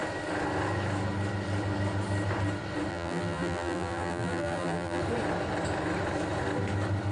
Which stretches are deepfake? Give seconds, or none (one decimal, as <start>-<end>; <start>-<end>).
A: 2.9-5.0